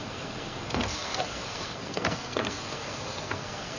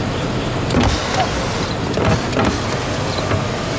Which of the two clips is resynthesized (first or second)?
first